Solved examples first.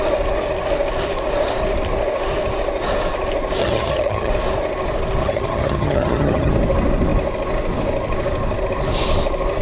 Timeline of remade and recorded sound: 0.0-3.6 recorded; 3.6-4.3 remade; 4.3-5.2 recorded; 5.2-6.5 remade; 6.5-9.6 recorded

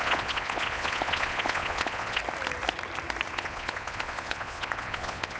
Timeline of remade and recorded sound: 0.0-2.2 remade; 2.2-3.3 recorded; 3.3-5.4 remade